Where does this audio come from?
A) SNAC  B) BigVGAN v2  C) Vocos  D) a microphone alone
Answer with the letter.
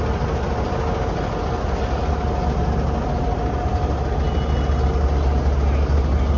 D